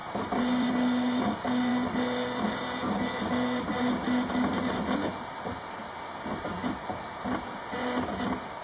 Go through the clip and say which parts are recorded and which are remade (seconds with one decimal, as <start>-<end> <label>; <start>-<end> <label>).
0.0-0.7 remade; 0.7-8.6 recorded